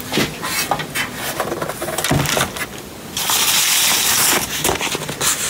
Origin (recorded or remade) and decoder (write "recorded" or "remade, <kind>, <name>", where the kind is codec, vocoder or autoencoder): recorded